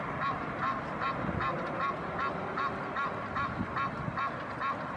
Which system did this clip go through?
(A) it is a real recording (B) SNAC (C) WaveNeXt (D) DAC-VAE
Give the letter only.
A